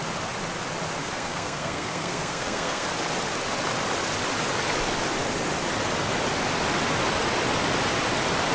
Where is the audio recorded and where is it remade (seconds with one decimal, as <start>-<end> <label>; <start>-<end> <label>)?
0.0-1.0 recorded; 1.0-2.9 remade; 2.9-8.5 recorded